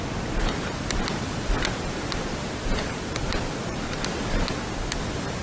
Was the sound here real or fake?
real